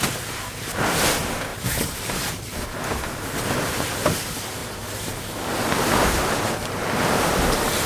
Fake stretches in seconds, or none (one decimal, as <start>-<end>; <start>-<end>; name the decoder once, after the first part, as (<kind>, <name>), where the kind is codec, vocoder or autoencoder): 1.5-2.4 (vocoder, BigVGAN v2); 4.6-6.4